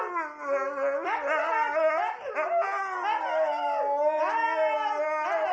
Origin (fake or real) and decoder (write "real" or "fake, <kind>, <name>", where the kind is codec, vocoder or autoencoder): real